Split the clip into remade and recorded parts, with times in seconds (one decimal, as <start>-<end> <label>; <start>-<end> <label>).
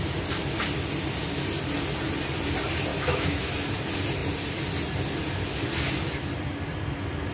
0.0-2.9 recorded; 2.9-3.5 remade; 3.5-7.3 recorded